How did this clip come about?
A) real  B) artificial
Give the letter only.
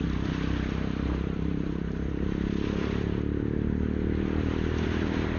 B